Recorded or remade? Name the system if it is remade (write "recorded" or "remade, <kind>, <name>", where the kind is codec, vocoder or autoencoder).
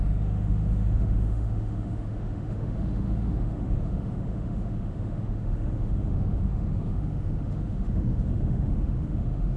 remade, autoencoder, DAC-VAE